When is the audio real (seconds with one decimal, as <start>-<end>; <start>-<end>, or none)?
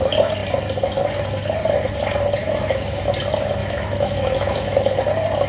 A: 0.0-2.4; 3.0-3.6; 5.0-5.5